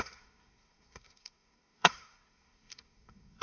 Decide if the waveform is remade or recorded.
remade